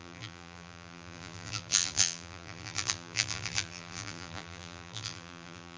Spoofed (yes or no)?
yes